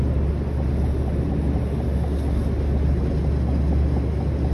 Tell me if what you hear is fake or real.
real